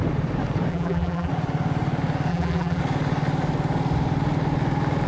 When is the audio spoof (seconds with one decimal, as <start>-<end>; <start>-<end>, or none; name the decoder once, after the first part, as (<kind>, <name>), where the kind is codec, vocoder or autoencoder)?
0.7-1.3 (vocoder, BigVGAN v2); 2.3-2.8